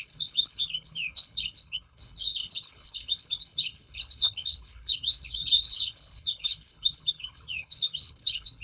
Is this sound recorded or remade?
remade